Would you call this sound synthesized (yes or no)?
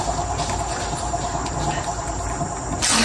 no